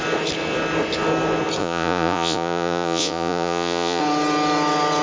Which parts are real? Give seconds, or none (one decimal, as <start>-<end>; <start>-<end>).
0.0-1.6; 4.0-5.0